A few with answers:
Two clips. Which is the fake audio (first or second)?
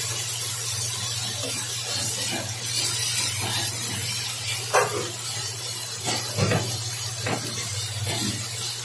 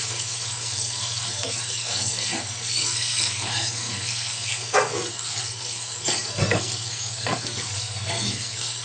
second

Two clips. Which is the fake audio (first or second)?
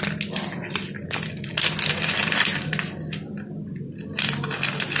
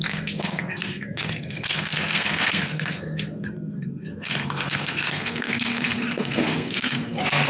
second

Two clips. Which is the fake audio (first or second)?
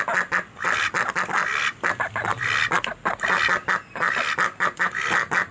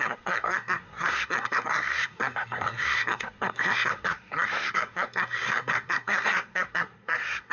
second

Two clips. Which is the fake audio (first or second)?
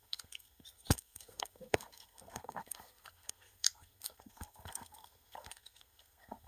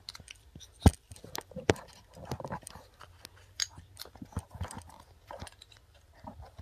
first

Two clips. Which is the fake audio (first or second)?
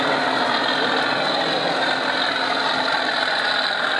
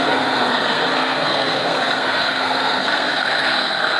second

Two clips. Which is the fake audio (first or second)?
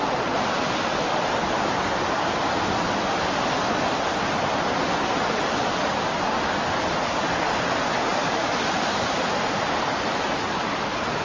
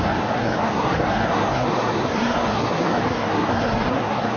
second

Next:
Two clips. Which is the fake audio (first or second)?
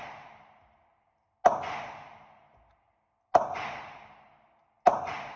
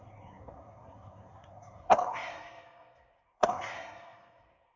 second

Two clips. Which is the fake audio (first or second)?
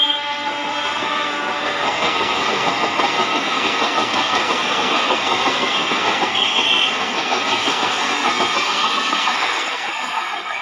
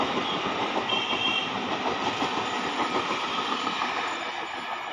first